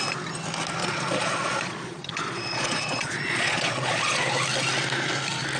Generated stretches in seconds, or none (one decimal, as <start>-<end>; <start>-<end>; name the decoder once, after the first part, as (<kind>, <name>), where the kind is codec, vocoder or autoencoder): 0.8-4.2 (vocoder, Vocos)